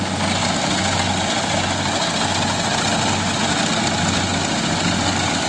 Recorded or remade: recorded